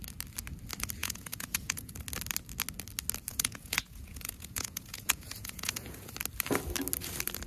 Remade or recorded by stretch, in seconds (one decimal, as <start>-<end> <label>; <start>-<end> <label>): 0.0-1.0 recorded; 1.0-1.9 remade; 1.9-3.3 recorded; 3.3-6.1 remade; 6.1-7.5 recorded